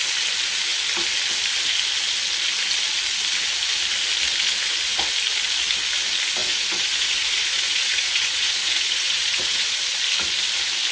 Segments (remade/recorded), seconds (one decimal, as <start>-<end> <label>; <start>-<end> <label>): 0.0-6.4 recorded; 6.4-9.8 remade; 9.8-10.9 recorded